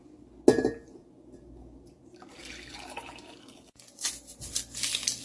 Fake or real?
real